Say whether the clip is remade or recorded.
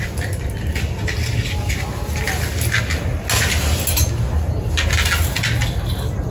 recorded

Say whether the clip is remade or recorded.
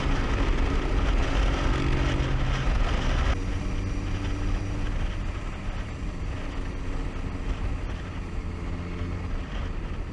recorded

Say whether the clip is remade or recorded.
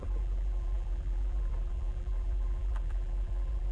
remade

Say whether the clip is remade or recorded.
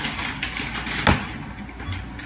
recorded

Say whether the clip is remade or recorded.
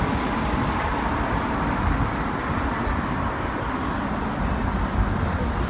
recorded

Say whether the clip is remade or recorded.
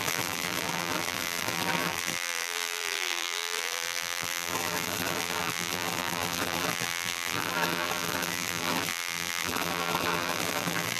remade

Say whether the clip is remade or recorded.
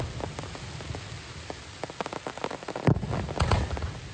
recorded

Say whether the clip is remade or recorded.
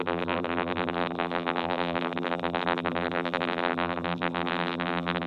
remade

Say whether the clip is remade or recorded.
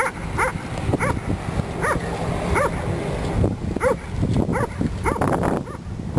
recorded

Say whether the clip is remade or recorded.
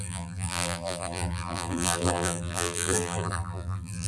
remade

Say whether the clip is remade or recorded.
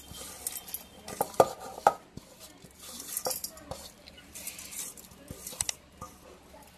recorded